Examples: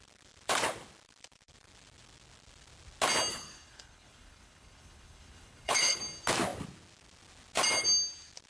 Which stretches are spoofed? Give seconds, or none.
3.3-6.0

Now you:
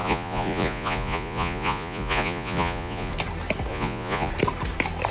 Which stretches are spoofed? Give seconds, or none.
0.0-3.1; 3.7-4.3

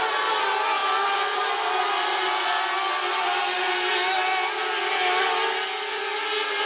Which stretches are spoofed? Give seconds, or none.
none

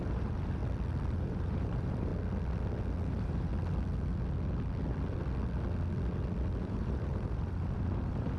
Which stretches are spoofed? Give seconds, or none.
0.0-0.6; 1.1-2.1; 3.1-3.5; 6.6-8.4

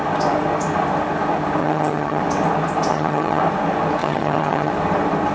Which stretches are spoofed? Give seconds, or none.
1.6-2.2; 2.9-3.4; 4.0-4.7

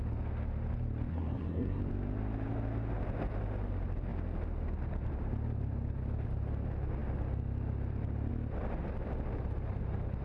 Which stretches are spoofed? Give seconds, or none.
1.1-1.8

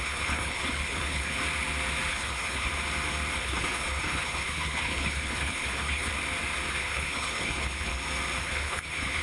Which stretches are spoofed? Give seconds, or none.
0.0-1.4; 2.1-2.7; 3.4-6.1; 6.7-7.9; 8.4-9.2

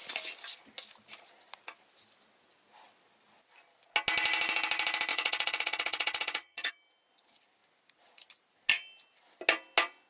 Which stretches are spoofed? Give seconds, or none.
5.1-6.7